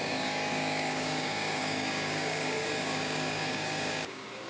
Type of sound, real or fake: fake